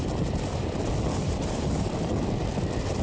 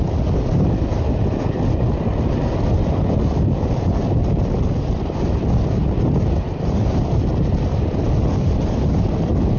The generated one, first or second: first